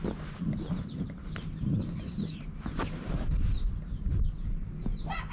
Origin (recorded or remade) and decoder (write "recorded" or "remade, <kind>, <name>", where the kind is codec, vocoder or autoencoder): recorded